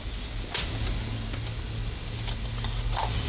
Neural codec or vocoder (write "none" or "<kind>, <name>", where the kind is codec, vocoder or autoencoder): none